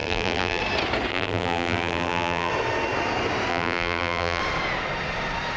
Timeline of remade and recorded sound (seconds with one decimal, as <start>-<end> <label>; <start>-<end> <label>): 0.0-0.6 remade; 0.6-1.1 recorded; 1.1-2.5 remade; 2.5-3.5 recorded; 3.5-4.4 remade; 4.4-5.6 recorded

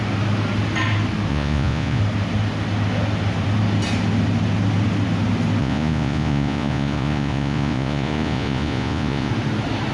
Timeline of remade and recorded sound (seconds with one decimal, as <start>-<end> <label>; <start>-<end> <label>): 0.0-1.3 recorded; 1.3-2.0 remade; 2.0-5.6 recorded; 5.6-9.3 remade; 9.3-9.9 recorded

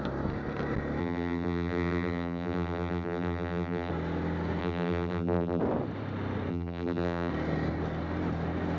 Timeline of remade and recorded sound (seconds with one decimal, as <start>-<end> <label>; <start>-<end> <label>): 0.0-1.0 recorded; 1.0-3.9 remade; 3.9-4.6 recorded; 4.6-5.6 remade; 5.6-6.5 recorded; 6.5-7.3 remade; 7.3-8.8 recorded

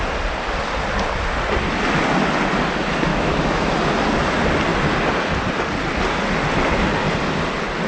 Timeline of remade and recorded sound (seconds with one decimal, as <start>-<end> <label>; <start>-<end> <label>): 0.0-3.1 recorded; 3.1-3.7 remade; 3.7-7.9 recorded

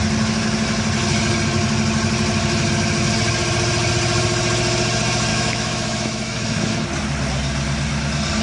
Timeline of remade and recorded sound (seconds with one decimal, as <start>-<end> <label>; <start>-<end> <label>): 0.0-5.3 recorded; 5.3-6.7 remade; 6.7-8.4 recorded

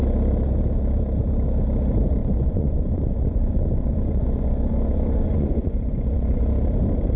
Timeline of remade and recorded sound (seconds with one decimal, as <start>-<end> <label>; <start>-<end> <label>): 0.0-2.2 recorded; 2.2-6.5 remade; 6.5-7.2 recorded

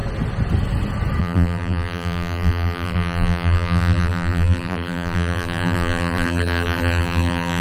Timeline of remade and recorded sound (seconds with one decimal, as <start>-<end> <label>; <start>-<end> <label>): 0.0-1.2 recorded; 1.2-7.6 remade